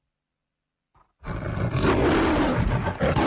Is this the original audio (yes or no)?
yes